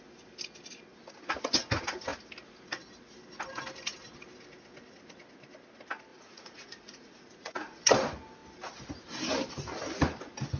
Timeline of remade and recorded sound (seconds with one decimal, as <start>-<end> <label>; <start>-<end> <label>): 0.0-6.1 recorded; 6.1-7.8 remade; 7.8-10.6 recorded